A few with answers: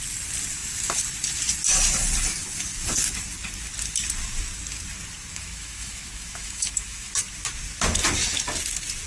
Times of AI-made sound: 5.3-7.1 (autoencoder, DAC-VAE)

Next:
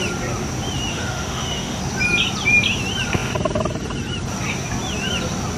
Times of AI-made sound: 0.9-1.8 (autoencoder, DAC-VAE)

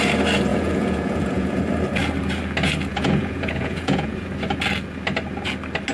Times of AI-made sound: 0.5-1.6 (vocoder, Vocos); 2.9-4.3

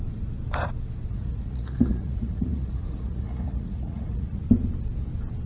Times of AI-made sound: 1.1-4.4 (vocoder, Vocos)

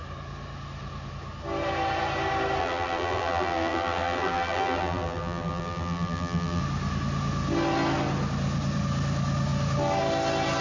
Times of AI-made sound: 2.6-6.6 (vocoder, BigVGAN v2)